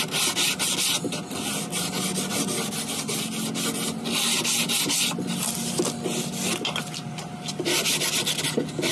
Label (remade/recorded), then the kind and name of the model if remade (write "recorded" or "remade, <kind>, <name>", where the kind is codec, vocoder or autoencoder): recorded